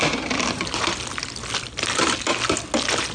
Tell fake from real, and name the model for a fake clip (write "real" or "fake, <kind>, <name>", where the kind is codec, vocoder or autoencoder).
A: real